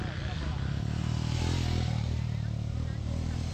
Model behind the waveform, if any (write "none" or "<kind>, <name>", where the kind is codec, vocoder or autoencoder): none